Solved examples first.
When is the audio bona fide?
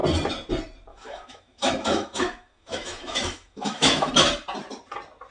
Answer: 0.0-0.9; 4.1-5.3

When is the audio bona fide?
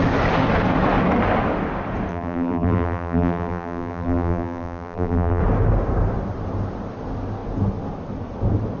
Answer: 0.0-2.1; 5.4-8.8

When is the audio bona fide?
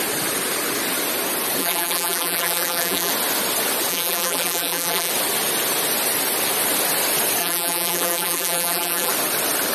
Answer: 0.0-1.6; 3.1-3.9; 5.1-7.4; 9.1-9.7